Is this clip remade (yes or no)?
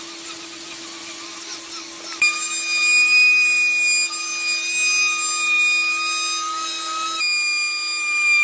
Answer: no